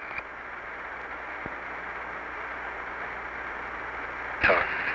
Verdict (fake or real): real